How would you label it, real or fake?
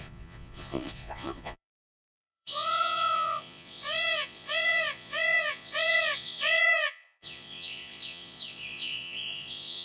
fake